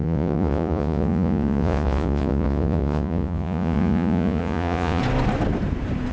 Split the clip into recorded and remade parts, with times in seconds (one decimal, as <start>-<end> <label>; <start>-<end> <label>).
0.0-5.0 remade; 5.0-6.1 recorded